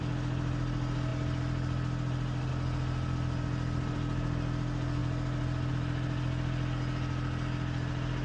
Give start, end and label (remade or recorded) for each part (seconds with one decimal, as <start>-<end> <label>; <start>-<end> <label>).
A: 0.0-8.2 recorded